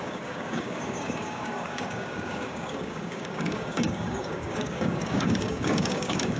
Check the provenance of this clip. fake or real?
fake